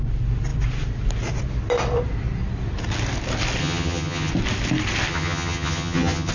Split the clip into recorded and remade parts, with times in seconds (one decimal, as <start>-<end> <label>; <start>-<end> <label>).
0.0-3.6 recorded; 3.6-4.3 remade; 4.3-5.1 recorded; 5.1-6.3 remade